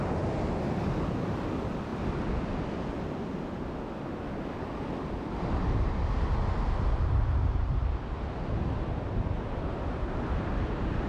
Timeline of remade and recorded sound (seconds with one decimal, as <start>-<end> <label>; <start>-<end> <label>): 0.0-11.1 recorded